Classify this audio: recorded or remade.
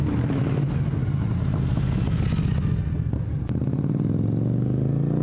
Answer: recorded